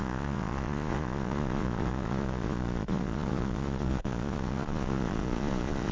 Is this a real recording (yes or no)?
no